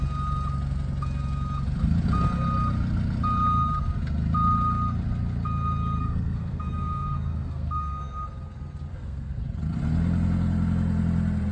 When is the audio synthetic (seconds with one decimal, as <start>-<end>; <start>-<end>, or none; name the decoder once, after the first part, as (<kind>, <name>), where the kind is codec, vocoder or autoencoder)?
6.0-8.3 (codec, SNAC); 8.9-9.4